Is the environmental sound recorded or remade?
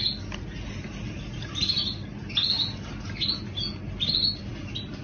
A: recorded